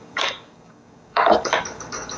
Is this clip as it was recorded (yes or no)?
no